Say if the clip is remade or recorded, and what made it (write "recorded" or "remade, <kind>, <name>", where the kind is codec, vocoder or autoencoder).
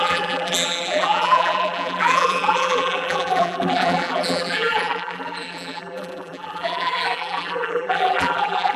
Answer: remade, vocoder, BigVGAN v2